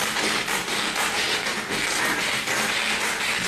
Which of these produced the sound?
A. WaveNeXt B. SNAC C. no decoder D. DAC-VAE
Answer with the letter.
C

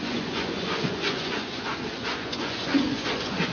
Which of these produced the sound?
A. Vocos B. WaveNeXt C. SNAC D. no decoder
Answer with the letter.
A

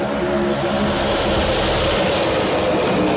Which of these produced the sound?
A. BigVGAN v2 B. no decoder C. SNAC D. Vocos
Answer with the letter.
B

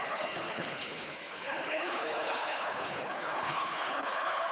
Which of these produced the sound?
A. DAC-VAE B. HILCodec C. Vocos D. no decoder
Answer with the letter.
B